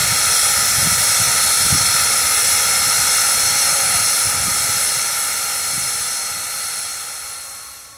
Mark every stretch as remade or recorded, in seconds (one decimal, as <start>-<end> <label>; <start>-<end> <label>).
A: 0.0-8.0 recorded